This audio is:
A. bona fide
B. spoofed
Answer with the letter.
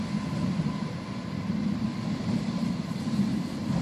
A